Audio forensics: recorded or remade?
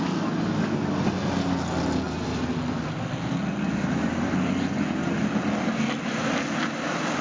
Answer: recorded